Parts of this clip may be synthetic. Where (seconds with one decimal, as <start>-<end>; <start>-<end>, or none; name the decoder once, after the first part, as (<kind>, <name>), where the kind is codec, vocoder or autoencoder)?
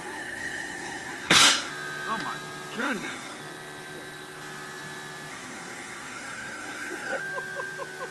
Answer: 0.0-1.7 (codec, SNAC); 2.8-3.4; 5.3-7.2